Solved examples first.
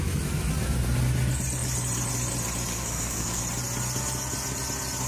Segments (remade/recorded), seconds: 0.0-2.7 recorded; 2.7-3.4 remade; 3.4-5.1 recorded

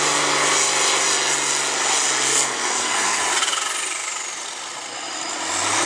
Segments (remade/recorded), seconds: 0.0-2.3 recorded; 2.3-3.2 remade; 3.2-5.9 recorded

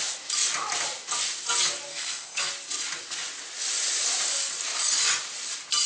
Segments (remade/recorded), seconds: 0.0-1.9 recorded; 1.9-2.5 remade; 2.5-5.9 recorded